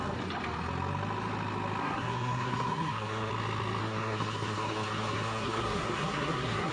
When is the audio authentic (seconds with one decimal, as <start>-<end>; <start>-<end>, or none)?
0.0-1.8; 3.3-3.8